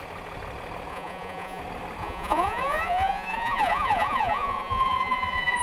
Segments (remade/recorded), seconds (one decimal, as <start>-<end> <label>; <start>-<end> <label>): 0.0-0.9 recorded; 0.9-1.6 remade; 1.6-2.0 recorded; 2.0-5.6 remade